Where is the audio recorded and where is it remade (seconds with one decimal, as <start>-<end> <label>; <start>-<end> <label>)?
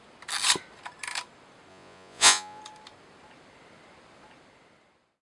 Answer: 0.0-1.7 recorded; 1.7-2.6 remade; 2.6-5.3 recorded